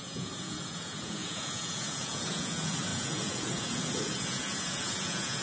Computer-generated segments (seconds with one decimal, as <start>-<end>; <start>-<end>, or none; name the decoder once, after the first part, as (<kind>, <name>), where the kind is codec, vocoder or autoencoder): 0.0-5.4 (vocoder, Vocos)